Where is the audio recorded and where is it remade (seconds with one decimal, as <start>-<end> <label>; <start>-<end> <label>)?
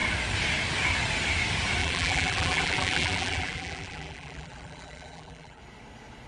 0.0-1.8 recorded; 1.8-5.6 remade; 5.6-6.3 recorded